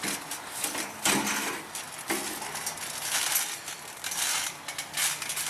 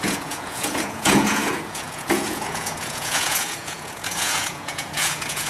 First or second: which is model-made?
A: second